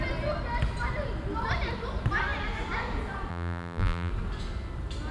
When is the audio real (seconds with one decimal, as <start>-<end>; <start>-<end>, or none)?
0.0-3.3; 4.1-5.1